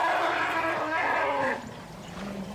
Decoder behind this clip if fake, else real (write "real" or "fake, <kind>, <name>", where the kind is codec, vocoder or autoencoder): real